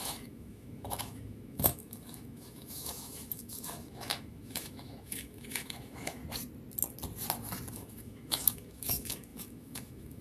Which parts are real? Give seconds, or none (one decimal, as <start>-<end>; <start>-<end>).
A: 6.2-7.7